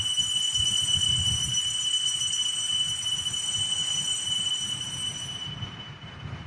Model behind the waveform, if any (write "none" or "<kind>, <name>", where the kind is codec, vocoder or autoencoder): none